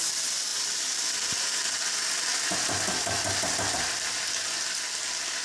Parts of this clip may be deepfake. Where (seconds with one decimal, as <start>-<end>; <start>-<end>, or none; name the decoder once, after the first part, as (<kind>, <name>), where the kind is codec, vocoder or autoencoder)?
2.3-4.1 (vocoder, BigVGAN v2)